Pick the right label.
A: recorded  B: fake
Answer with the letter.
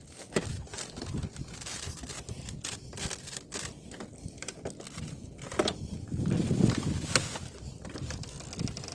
A